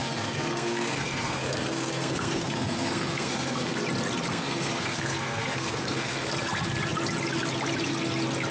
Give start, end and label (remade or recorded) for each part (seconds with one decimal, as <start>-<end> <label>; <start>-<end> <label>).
0.0-3.8 remade; 3.8-4.3 recorded; 4.3-6.3 remade; 6.3-8.5 recorded